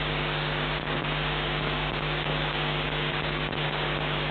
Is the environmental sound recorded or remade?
remade